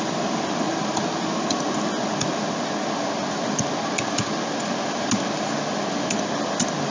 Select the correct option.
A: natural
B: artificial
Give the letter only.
A